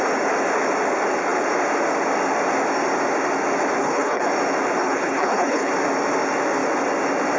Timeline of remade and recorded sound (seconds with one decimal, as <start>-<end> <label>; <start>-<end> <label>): 0.0-3.8 recorded; 3.8-4.3 remade; 4.3-4.8 recorded; 4.8-5.7 remade; 5.7-7.4 recorded